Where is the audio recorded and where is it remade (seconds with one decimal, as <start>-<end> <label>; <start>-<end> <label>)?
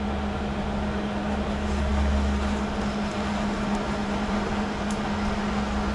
0.0-4.0 recorded; 4.0-4.5 remade; 4.5-5.9 recorded